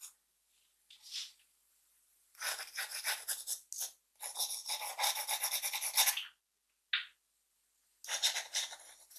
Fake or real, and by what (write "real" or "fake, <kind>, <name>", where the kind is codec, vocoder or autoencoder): real